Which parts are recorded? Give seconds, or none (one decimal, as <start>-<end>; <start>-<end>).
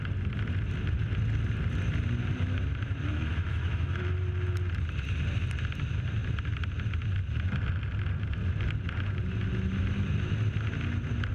0.0-3.1; 4.0-11.3